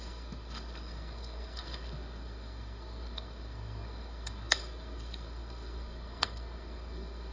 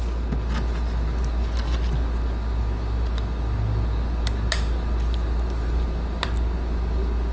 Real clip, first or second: second